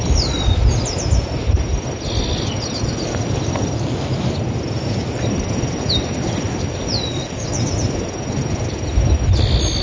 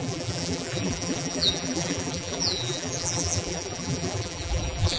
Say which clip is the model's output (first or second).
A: second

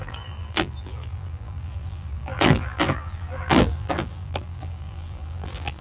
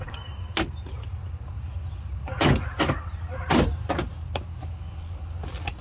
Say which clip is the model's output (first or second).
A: first